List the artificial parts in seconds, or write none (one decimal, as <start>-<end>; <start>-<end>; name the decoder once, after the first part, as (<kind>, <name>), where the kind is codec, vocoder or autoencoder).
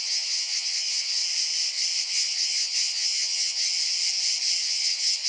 0.0-1.2 (vocoder, HiFi-GAN); 2.0-3.7; 4.6-5.3